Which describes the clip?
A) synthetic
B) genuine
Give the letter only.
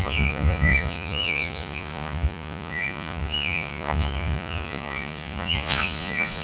A